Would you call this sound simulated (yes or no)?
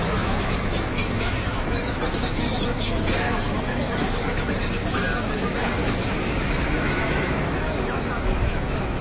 yes